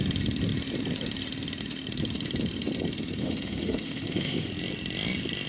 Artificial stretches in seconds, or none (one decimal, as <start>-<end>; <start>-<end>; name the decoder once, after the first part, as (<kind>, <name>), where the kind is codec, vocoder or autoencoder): 3.2-4.5 (autoencoder, DAC-VAE)